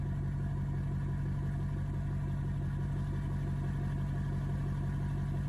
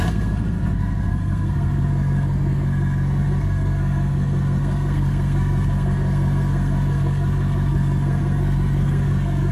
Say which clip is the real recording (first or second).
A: first